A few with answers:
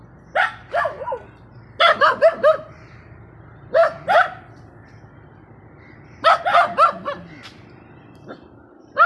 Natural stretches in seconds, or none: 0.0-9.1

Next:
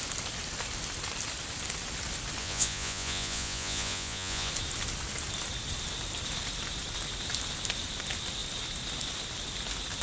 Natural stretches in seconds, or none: 0.0-2.4; 4.5-10.0

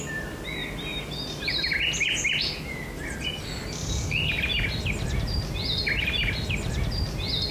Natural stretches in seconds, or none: 0.0-7.5

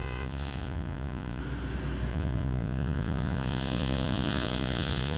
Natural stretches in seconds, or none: 1.4-2.1

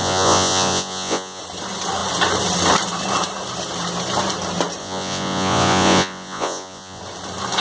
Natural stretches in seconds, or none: 1.4-4.8; 7.0-7.6

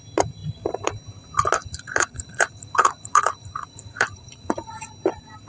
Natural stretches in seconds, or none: 0.0-1.6; 4.9-5.5